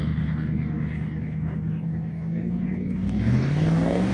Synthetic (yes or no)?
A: yes